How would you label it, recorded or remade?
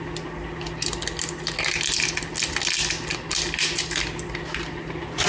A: recorded